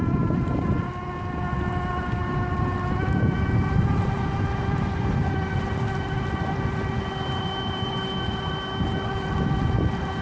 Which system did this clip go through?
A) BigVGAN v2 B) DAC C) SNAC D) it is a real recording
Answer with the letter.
D